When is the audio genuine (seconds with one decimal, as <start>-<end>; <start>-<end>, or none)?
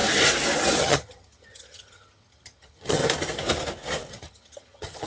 0.0-0.8; 3.0-4.1